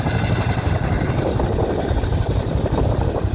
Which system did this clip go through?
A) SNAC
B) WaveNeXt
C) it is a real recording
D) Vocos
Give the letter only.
C